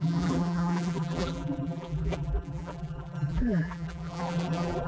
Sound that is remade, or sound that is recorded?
remade